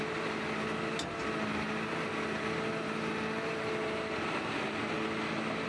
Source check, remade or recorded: recorded